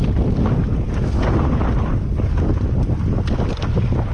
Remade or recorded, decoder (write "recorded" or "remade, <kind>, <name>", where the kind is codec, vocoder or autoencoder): recorded